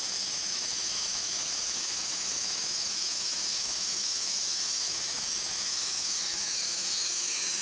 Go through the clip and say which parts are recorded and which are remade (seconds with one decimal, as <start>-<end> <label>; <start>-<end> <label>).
0.0-7.6 remade